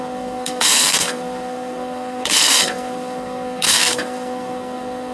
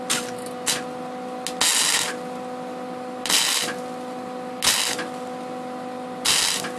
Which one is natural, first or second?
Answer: second